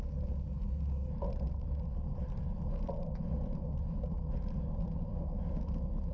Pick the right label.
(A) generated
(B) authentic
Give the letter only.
B